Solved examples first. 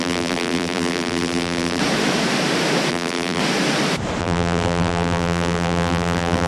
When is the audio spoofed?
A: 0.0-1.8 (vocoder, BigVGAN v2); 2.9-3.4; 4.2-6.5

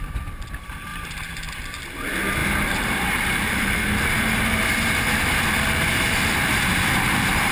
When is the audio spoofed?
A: 0.9-1.4 (vocoder, BigVGAN v2); 2.4-6.5

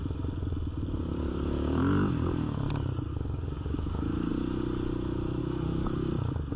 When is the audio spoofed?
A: 1.3-2.6 (codec, DAC); 3.1-4.3; 5.4-6.1

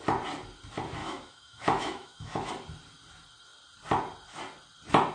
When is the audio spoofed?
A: 1.0-2.5 (autoencoder, DAC-VAE)

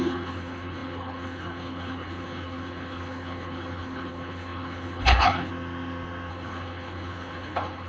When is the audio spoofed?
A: 0.0-5.5 (codec, HILCodec); 6.3-7.9

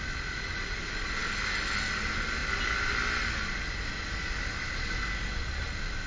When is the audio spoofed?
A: none

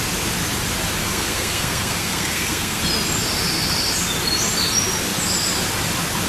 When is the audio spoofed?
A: 1.0-2.8 (codec, SNAC)

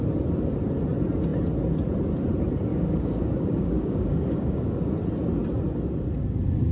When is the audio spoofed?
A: 2.7-4.9 (codec, DAC)